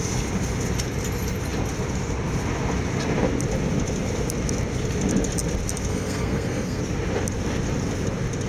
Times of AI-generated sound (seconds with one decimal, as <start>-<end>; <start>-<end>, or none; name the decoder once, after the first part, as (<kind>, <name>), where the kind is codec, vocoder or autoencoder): 5.9-6.8 (codec, SNAC)